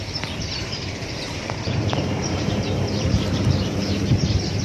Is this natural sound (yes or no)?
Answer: no